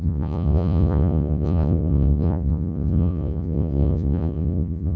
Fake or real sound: fake